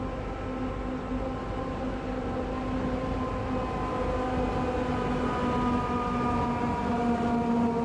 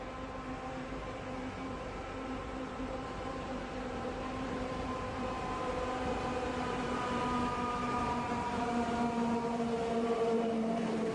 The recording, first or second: first